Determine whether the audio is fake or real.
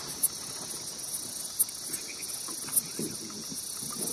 real